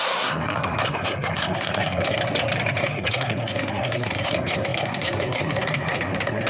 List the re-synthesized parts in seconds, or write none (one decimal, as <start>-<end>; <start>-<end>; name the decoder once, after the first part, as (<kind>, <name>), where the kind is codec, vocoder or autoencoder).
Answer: 0.0-2.2 (codec, SNAC); 2.8-6.5